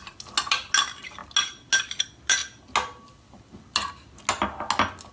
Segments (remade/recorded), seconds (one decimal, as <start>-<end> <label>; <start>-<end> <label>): 0.0-5.1 recorded